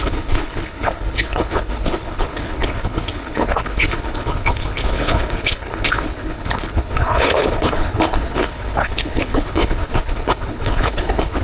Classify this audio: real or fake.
fake